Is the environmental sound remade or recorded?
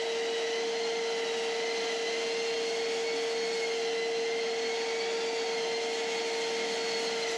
recorded